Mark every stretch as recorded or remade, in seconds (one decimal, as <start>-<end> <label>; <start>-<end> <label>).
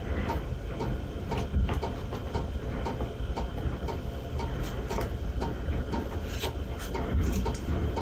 0.0-8.0 recorded